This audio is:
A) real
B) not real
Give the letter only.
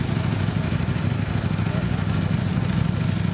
A